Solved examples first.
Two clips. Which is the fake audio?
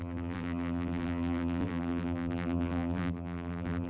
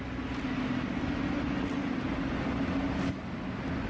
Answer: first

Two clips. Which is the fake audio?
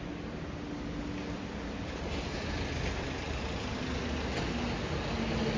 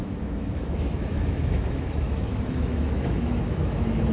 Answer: second